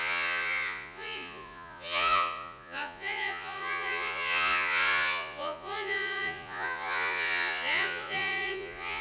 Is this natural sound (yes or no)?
no